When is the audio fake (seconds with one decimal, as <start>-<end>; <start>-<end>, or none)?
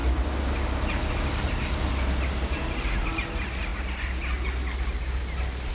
none